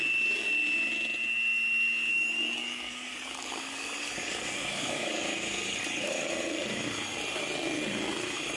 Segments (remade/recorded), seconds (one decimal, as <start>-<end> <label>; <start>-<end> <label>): 0.0-2.1 recorded; 2.1-6.3 remade; 6.3-8.6 recorded